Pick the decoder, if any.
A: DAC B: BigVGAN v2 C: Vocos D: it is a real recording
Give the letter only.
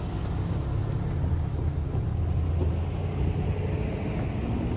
D